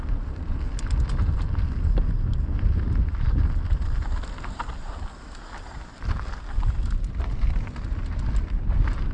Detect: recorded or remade recorded